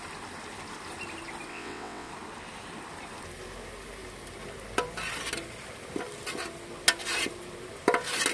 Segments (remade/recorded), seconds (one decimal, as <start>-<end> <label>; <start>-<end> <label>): 0.0-1.5 recorded; 1.5-2.1 remade; 2.1-8.3 recorded